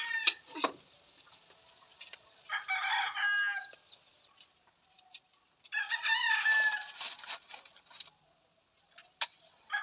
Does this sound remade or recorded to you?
recorded